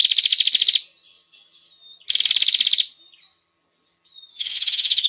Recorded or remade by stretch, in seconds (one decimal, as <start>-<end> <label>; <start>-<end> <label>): 0.0-4.3 recorded; 4.3-5.1 remade